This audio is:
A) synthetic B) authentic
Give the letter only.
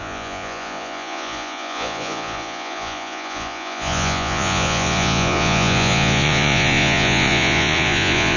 A